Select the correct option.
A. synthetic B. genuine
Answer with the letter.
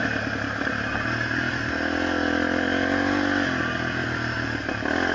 B